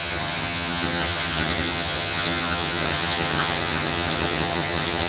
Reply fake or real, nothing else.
fake